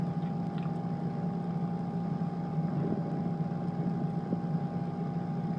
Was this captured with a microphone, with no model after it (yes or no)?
yes